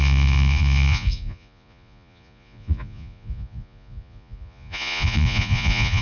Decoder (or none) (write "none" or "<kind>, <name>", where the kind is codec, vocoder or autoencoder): vocoder, Vocos